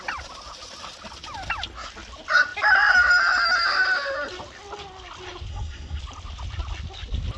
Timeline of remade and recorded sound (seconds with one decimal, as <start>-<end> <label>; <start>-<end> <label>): 0.0-5.5 recorded; 5.5-6.0 remade; 6.0-7.4 recorded